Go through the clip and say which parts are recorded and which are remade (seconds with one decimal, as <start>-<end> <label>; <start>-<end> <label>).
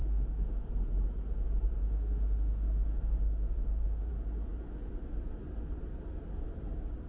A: 0.0-0.7 remade; 0.7-1.8 recorded; 1.8-4.1 remade; 4.1-7.1 recorded